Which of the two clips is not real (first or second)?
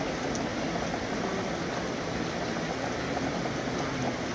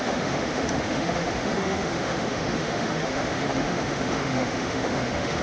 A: second